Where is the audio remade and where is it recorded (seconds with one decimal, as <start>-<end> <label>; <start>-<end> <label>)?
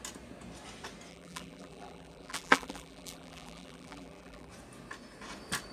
0.0-1.1 recorded; 1.1-4.5 remade; 4.5-5.7 recorded